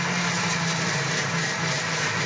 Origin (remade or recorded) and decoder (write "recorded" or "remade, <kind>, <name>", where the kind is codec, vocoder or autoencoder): recorded